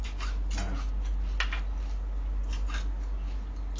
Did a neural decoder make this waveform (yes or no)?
no